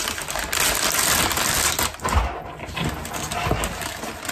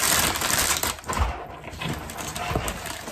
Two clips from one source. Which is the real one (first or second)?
first